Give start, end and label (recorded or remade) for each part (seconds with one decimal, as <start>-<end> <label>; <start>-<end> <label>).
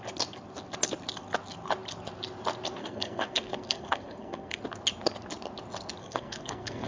0.0-2.8 recorded; 2.8-4.6 remade; 4.6-6.0 recorded; 6.0-6.9 remade